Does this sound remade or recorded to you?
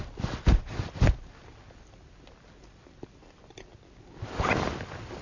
recorded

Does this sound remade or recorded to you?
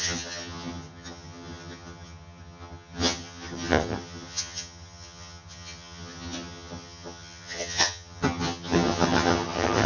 remade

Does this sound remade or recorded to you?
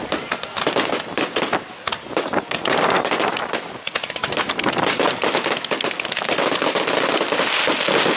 recorded